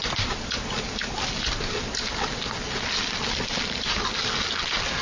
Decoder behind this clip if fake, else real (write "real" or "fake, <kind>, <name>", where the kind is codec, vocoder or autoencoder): real